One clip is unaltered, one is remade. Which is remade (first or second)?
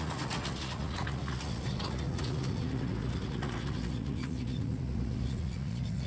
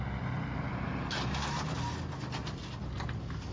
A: first